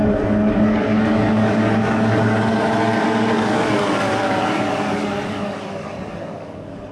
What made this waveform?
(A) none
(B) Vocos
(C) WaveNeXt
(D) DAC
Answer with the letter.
D